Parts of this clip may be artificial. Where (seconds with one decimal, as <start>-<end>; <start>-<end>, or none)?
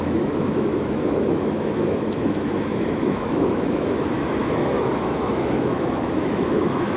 0.0-7.0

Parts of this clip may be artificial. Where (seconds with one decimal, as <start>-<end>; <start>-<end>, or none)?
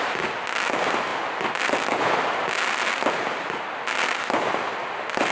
none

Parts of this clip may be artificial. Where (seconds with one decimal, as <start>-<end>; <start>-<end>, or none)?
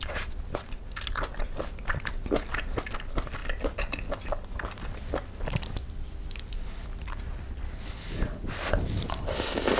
none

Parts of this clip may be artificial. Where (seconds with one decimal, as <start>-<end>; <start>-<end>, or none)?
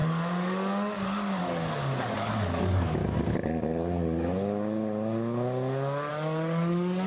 0.0-3.0; 6.1-7.1